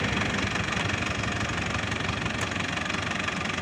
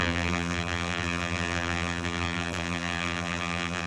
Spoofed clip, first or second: second